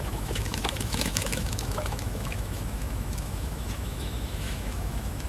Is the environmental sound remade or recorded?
remade